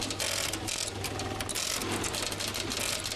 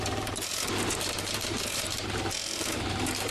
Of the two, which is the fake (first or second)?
second